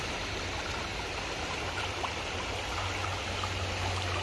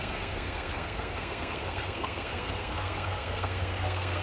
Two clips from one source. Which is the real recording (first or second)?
first